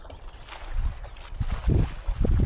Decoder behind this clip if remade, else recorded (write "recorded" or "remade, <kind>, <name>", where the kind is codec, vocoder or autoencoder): recorded